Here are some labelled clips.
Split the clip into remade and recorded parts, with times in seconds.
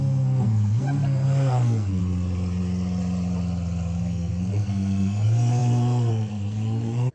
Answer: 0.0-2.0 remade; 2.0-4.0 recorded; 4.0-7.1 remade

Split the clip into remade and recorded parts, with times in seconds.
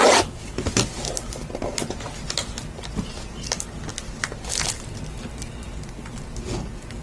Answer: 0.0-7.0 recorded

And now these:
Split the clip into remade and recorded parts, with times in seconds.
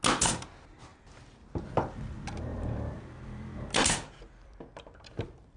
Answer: 0.0-2.5 recorded; 2.5-5.6 remade